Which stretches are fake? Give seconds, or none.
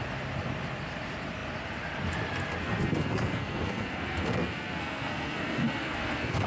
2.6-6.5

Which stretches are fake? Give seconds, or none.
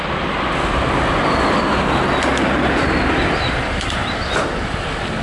none